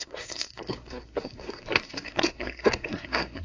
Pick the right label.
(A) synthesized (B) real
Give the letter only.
A